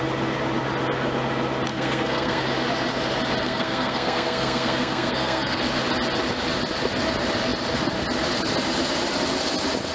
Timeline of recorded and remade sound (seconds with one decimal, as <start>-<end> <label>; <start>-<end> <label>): 0.0-1.7 recorded; 1.7-2.4 remade; 2.4-3.4 recorded; 3.4-5.6 remade; 5.6-9.9 recorded